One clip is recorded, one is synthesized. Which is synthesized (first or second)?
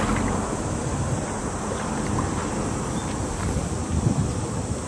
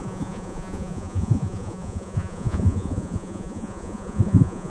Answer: second